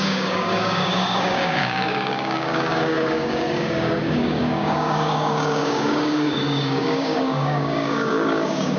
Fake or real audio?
fake